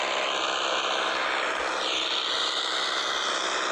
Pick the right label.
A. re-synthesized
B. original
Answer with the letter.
B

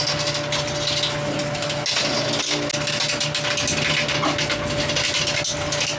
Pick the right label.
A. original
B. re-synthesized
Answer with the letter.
A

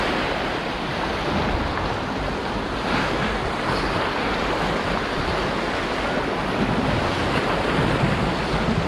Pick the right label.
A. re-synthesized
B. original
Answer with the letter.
B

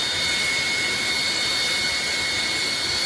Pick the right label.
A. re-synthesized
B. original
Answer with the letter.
B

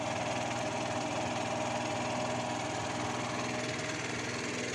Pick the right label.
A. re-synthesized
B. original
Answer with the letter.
B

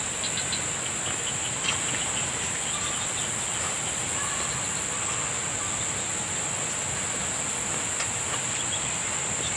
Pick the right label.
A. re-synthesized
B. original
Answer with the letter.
B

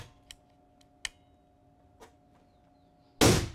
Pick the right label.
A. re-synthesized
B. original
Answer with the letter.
B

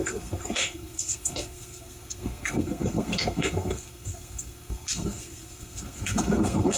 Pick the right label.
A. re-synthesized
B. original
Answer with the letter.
A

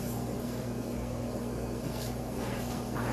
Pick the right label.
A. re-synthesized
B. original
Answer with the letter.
A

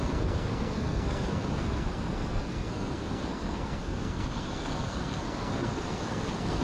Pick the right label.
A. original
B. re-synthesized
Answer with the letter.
B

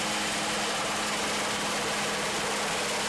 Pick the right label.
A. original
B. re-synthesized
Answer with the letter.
A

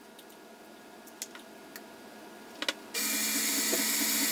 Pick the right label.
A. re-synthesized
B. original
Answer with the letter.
B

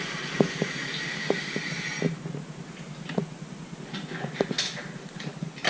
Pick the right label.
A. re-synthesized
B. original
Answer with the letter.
B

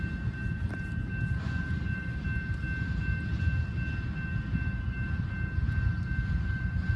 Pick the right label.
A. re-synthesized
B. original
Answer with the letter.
B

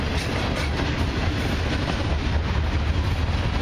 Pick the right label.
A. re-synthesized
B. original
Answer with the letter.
B